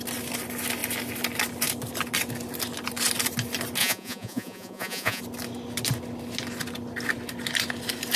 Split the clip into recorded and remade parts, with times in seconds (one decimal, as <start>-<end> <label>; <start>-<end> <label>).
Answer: 0.0-3.8 recorded; 3.8-5.2 remade; 5.2-8.2 recorded